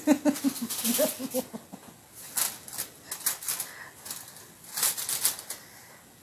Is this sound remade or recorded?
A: recorded